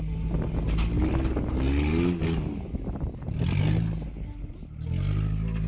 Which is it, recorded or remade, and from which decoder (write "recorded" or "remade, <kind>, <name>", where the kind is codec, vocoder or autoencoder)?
recorded